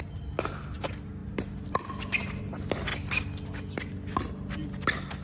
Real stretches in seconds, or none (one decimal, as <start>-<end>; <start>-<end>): 0.0-5.2